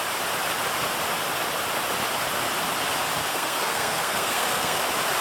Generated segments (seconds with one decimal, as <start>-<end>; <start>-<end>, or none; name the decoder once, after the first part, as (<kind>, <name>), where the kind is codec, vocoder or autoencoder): 3.3-4.8 (codec, SNAC)